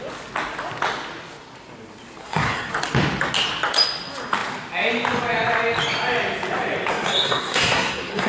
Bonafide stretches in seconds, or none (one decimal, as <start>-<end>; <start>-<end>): 0.0-2.2; 2.7-6.9